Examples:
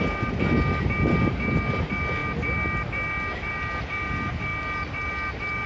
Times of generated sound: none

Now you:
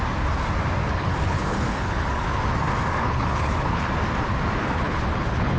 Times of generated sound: 0.8-2.4 (codec, HILCodec); 3.0-3.9; 4.6-5.6

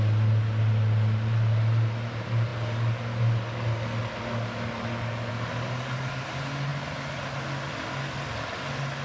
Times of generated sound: none